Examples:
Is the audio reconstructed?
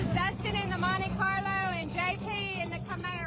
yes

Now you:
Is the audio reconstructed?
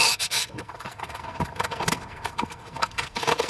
yes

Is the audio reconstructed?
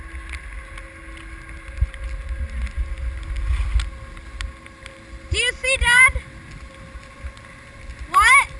no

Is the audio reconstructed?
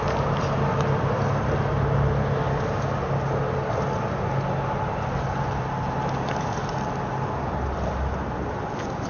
no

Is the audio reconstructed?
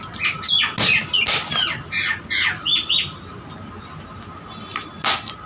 no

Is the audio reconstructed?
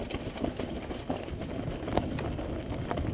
no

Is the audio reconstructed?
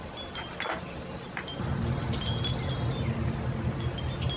no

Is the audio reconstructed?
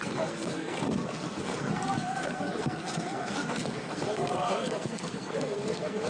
yes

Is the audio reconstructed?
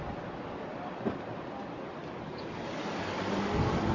no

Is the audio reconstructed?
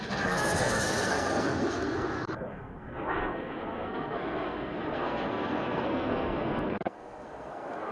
yes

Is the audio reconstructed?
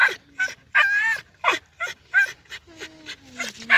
no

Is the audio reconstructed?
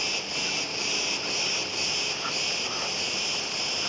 no